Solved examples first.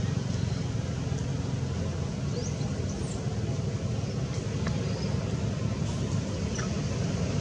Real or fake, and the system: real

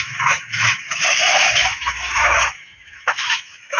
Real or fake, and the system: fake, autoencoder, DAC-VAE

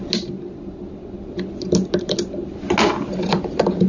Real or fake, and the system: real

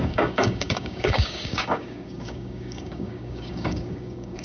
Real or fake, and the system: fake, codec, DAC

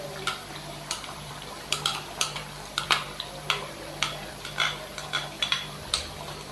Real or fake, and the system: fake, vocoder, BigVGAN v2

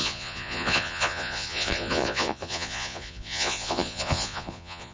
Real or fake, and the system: fake, vocoder, Vocos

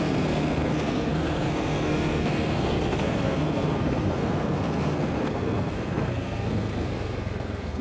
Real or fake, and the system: fake, codec, SNAC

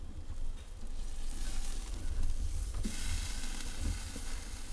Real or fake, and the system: real